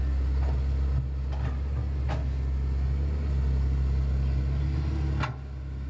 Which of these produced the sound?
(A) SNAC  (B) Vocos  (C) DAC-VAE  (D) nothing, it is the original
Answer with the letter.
D